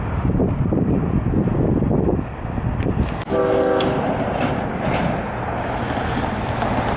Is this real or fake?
real